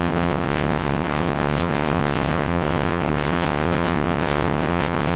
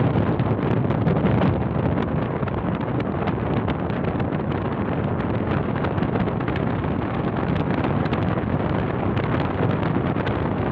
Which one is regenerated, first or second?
first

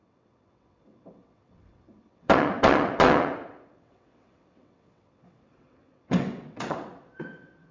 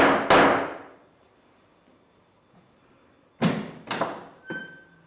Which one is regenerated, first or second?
first